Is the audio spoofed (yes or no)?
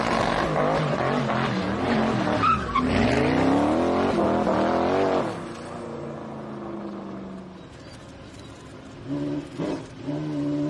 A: no